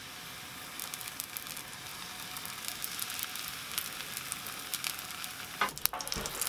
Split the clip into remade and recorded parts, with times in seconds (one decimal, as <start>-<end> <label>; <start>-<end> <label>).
0.0-6.5 recorded